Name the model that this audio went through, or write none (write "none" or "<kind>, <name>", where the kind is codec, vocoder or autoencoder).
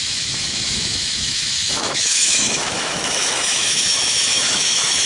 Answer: autoencoder, DAC-VAE